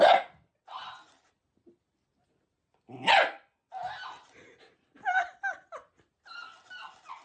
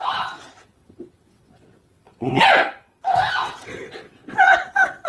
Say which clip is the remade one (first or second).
second